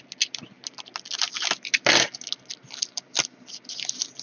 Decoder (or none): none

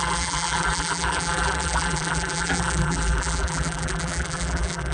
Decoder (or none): vocoder, BigVGAN v2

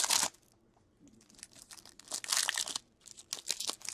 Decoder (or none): none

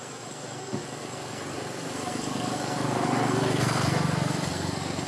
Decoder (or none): codec, SNAC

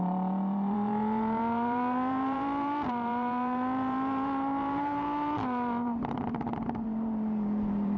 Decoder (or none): vocoder, BigVGAN v2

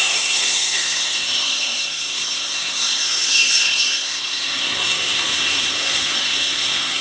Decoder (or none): codec, SNAC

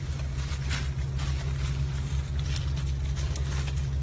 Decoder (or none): none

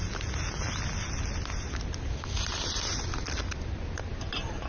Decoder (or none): none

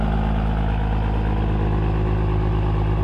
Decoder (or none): none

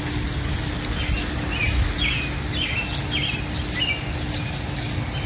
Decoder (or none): none